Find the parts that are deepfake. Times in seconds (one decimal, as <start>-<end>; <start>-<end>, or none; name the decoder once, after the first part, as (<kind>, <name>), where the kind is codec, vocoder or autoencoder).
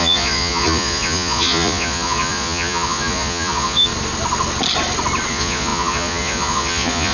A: 0.0-3.9 (vocoder, Vocos); 5.3-7.1